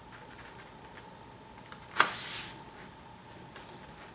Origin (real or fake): real